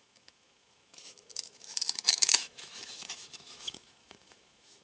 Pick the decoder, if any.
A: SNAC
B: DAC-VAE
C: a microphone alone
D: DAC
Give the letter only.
B